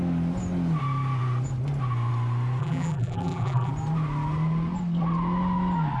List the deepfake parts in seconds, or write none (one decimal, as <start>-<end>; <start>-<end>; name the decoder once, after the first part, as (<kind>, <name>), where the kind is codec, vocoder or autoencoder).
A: 2.6-3.7 (vocoder, BigVGAN v2)